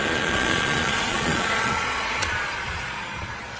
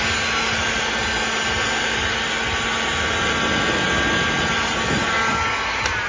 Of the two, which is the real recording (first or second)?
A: second